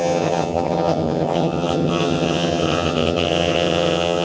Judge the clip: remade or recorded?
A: remade